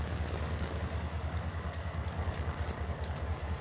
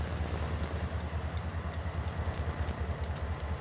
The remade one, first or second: first